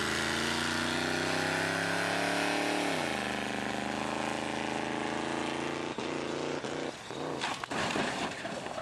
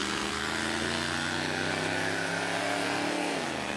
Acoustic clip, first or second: first